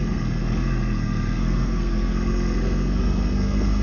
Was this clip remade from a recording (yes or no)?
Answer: yes